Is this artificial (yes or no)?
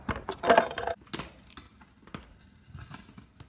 no